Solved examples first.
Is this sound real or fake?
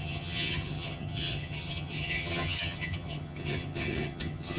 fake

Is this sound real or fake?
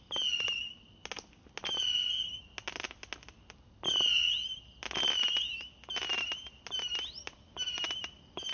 real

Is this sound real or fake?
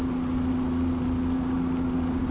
real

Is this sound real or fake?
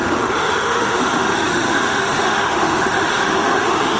fake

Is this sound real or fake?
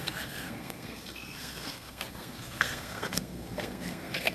fake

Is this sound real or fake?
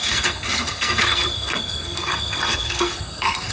fake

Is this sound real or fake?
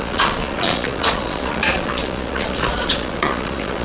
fake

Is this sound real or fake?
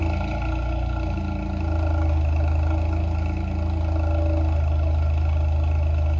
real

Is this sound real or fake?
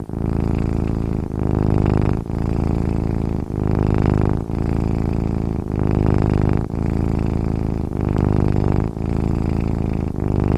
real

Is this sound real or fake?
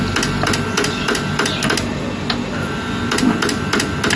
real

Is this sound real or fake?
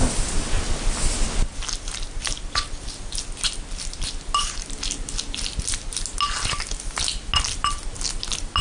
real